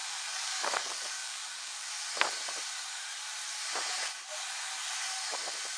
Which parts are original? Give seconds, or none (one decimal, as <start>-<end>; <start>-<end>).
1.9-5.8

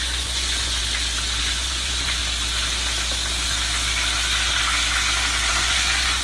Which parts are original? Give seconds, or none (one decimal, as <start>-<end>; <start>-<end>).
0.8-1.4; 2.2-5.5

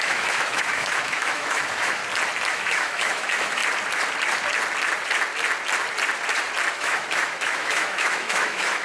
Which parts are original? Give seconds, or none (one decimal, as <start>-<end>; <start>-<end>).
2.0-2.5; 3.6-6.7

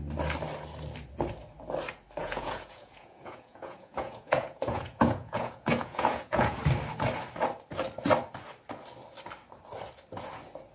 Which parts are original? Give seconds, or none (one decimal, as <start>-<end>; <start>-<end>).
0.0-2.2; 6.6-10.7